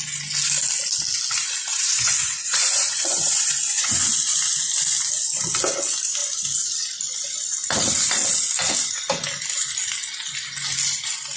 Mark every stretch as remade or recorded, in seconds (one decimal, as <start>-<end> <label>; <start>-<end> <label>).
0.0-1.7 recorded; 1.7-4.1 remade; 4.1-11.4 recorded